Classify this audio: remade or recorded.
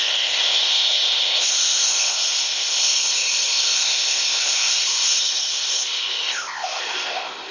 remade